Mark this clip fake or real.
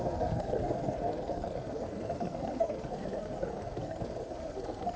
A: fake